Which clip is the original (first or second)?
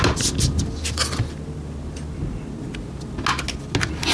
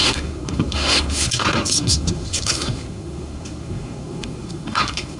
first